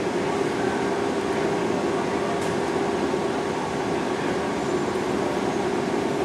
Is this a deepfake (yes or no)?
no